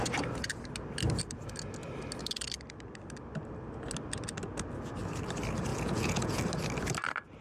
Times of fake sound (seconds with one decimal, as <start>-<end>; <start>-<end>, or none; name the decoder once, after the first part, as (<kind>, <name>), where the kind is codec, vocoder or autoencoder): 5.7-6.4 (vocoder, Vocos)